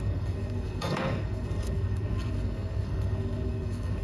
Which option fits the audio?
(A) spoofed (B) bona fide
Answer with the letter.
A